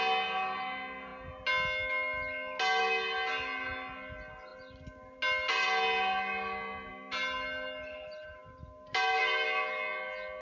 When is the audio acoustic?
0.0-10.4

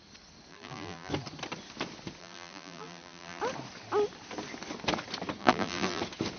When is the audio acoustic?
0.0-0.5; 1.1-2.2; 3.4-5.4; 6.0-6.4

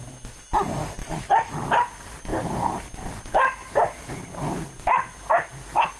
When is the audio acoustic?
0.0-1.0; 1.5-6.0

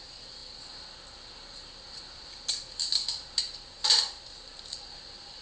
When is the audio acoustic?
0.0-5.4

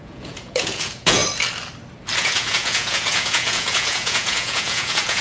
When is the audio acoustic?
1.2-2.2

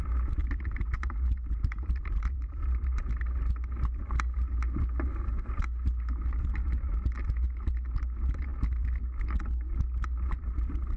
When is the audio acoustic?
0.0-0.4; 3.1-11.0